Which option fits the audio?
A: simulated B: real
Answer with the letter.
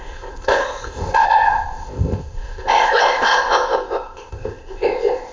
A